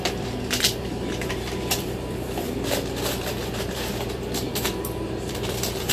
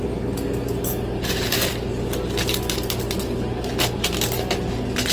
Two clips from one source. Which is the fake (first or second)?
first